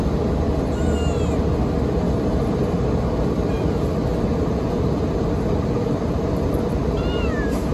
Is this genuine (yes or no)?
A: yes